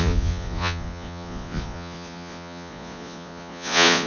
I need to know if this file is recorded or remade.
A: remade